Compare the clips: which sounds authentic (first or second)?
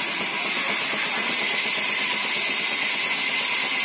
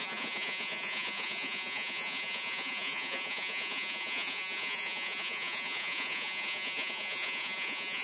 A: first